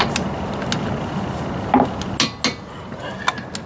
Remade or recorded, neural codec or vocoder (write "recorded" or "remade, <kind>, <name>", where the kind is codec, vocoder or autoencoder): recorded